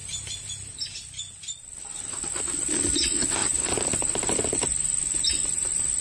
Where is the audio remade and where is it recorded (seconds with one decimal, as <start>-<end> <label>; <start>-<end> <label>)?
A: 0.0-6.0 recorded